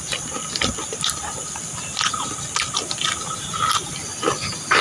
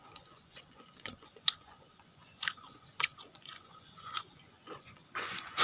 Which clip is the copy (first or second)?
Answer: second